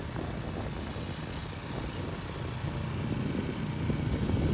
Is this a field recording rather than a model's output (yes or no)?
yes